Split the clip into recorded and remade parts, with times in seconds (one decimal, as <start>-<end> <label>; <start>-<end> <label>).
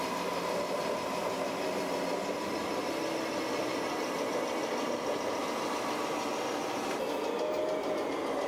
0.0-8.5 recorded